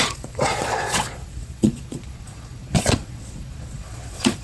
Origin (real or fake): fake